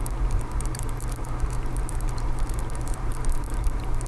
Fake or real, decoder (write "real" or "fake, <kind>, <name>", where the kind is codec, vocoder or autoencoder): fake, vocoder, BigVGAN v2